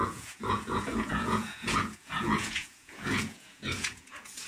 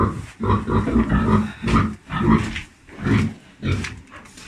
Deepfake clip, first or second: first